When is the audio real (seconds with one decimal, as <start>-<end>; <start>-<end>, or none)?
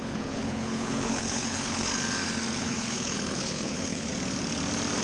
1.9-2.6; 4.1-5.0